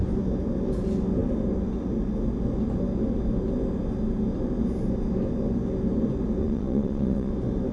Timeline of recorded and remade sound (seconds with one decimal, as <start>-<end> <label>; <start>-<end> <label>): 0.0-6.4 recorded; 6.4-7.3 remade; 7.3-7.7 recorded